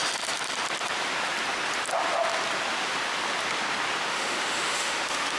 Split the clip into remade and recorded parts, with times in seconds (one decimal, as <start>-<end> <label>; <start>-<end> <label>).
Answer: 0.0-4.1 recorded; 4.1-5.4 remade